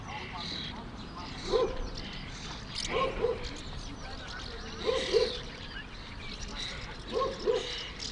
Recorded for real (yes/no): yes